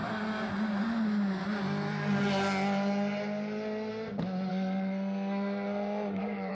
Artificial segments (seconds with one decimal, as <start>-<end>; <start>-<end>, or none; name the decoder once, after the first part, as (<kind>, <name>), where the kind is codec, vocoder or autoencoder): 4.5-6.5 (codec, SNAC)